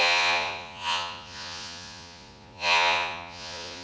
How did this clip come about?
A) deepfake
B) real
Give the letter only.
A